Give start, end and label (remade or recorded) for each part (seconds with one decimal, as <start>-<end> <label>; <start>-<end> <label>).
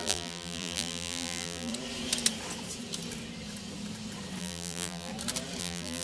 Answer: 0.0-1.7 remade; 1.7-4.4 recorded; 4.4-5.1 remade; 5.1-5.6 recorded; 5.6-6.0 remade